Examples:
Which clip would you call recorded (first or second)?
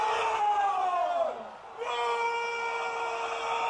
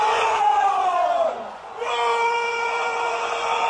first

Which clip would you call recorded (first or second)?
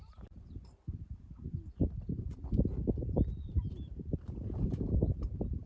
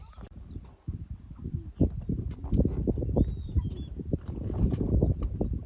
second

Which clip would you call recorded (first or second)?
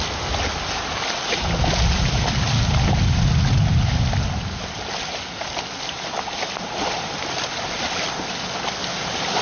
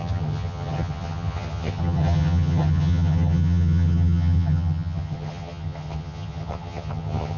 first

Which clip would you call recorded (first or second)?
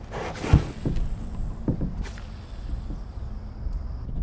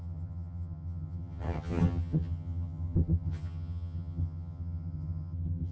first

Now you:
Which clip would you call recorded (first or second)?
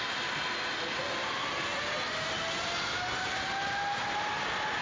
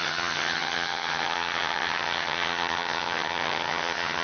first